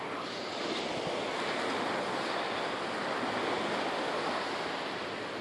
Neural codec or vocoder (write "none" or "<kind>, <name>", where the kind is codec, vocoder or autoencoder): none